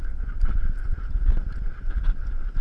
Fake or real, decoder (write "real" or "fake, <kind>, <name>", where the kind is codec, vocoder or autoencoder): fake, vocoder, BigVGAN v2